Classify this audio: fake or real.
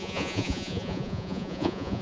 fake